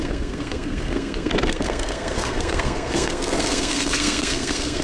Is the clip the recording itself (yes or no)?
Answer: no